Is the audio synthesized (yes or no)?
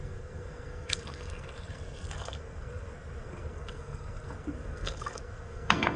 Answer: yes